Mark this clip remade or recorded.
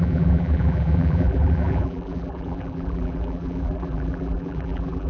remade